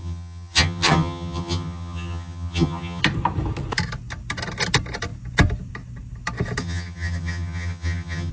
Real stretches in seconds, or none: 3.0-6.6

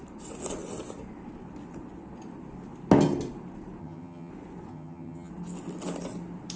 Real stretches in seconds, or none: 0.0-3.8; 4.3-4.7; 5.3-6.6

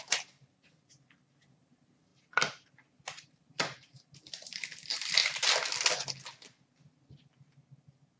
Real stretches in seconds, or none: 2.1-3.3; 5.2-8.2

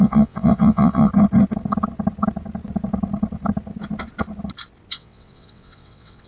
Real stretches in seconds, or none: 1.1-4.9